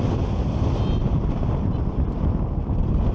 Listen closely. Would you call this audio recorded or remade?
recorded